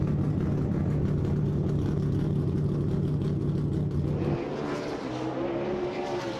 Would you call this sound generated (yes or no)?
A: no